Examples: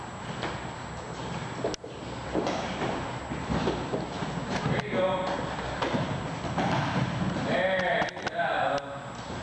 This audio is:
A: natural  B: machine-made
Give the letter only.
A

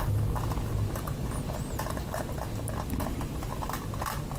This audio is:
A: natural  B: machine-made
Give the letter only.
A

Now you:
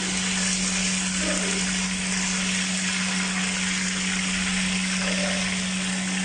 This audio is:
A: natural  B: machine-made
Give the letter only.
A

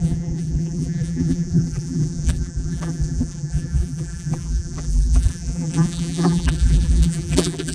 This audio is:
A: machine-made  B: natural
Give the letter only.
A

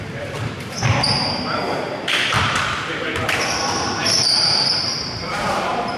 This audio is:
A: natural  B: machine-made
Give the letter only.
B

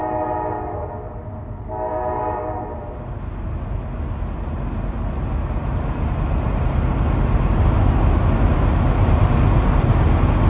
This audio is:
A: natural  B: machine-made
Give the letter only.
A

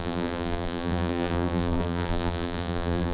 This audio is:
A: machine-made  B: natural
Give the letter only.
A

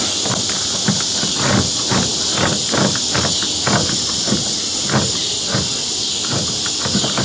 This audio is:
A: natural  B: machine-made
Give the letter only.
A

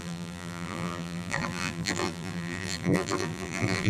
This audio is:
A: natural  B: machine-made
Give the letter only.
B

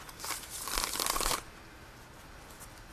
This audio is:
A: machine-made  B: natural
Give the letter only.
B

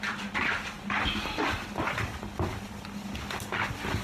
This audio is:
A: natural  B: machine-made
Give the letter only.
A